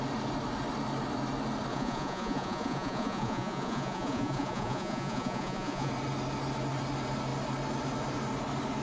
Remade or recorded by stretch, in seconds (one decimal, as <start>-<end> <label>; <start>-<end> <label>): 0.0-1.7 recorded; 1.7-5.9 remade; 5.9-8.8 recorded